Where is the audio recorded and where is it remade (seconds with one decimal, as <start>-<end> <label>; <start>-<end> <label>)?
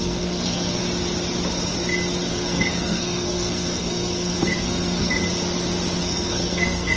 0.0-0.8 remade; 0.8-2.3 recorded; 2.3-5.2 remade; 5.2-6.0 recorded; 6.0-7.0 remade